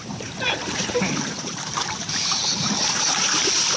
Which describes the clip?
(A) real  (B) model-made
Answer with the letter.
B